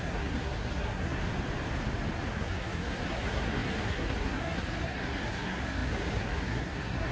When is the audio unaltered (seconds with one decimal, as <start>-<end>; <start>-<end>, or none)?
1.2-2.3